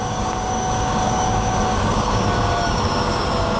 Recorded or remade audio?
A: remade